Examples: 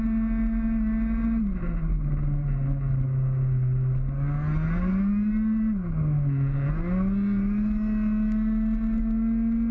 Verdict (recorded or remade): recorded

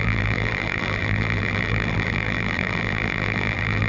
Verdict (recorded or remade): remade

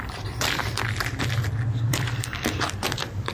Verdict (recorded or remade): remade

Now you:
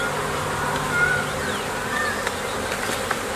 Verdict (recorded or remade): recorded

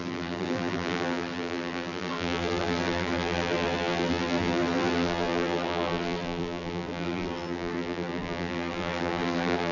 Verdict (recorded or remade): remade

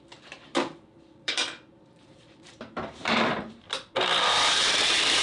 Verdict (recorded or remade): remade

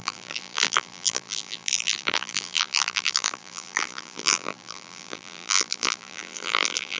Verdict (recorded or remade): remade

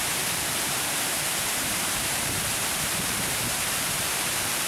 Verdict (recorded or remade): remade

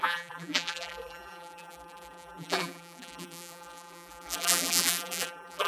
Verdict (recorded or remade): remade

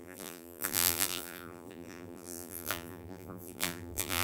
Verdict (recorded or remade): remade